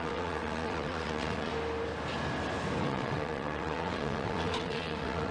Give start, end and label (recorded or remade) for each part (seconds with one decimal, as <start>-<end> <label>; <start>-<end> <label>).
0.0-1.5 remade; 1.5-2.8 recorded; 2.8-5.3 remade

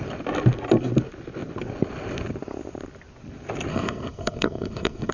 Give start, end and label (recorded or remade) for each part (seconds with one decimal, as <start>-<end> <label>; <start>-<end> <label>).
0.0-3.7 recorded; 3.7-5.1 remade

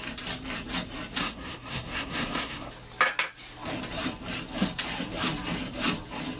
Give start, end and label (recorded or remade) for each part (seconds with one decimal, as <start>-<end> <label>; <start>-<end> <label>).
0.0-1.2 recorded; 1.2-2.7 remade; 2.7-6.4 recorded

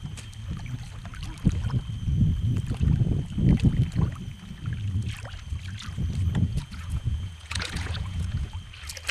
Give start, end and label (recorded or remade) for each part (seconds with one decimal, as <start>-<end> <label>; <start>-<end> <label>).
0.0-6.5 recorded; 6.5-8.5 remade; 8.5-9.1 recorded

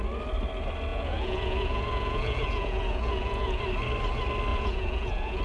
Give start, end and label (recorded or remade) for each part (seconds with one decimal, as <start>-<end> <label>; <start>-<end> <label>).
0.0-0.9 recorded; 0.9-3.6 remade; 3.6-4.5 recorded; 4.5-5.4 remade